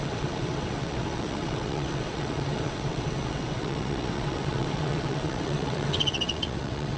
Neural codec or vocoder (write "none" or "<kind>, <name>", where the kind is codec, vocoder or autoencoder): vocoder, WaveNeXt